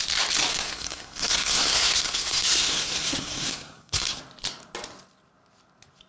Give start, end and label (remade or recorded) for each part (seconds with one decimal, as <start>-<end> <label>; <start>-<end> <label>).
0.0-0.5 recorded; 0.5-4.2 remade; 4.2-6.1 recorded